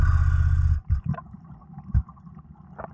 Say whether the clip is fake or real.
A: real